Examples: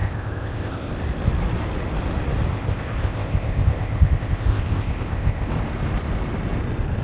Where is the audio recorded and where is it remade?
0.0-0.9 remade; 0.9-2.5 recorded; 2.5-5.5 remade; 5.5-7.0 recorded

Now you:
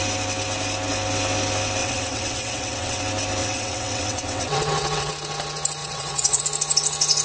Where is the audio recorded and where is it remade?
0.0-1.8 recorded; 1.8-3.0 remade; 3.0-3.4 recorded; 3.4-5.1 remade; 5.1-5.8 recorded; 5.8-6.4 remade; 6.4-7.2 recorded

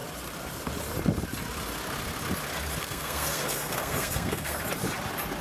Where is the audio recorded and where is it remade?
0.0-2.8 recorded; 2.8-4.6 remade; 4.6-5.4 recorded